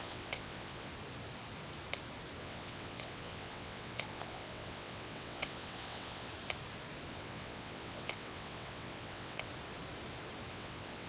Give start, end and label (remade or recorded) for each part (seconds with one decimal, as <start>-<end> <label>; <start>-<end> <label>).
0.0-0.9 remade; 0.9-2.4 recorded; 2.4-6.3 remade; 6.3-7.1 recorded; 7.1-9.5 remade; 9.5-10.5 recorded; 10.5-11.1 remade